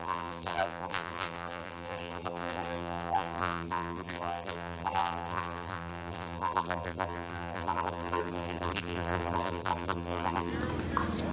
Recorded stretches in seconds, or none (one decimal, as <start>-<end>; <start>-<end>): 10.5-11.3